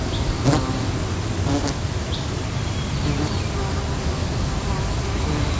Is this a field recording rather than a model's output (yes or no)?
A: yes